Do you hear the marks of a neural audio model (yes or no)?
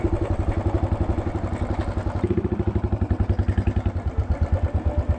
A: no